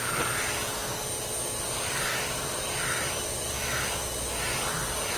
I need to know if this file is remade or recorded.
recorded